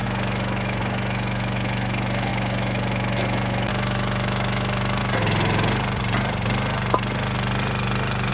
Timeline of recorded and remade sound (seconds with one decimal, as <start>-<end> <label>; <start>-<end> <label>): 0.0-5.0 remade; 5.0-8.3 recorded